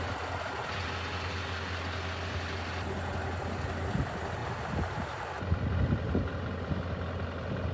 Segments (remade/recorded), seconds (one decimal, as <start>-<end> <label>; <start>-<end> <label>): 0.0-4.4 recorded; 4.4-5.3 remade; 5.3-7.7 recorded